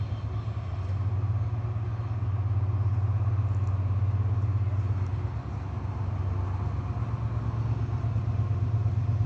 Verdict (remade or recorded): recorded